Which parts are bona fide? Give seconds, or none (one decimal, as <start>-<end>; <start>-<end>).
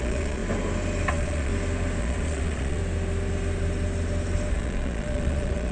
0.4-1.1; 1.5-2.0; 2.8-4.5